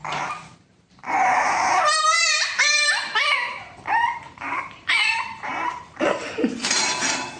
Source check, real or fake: fake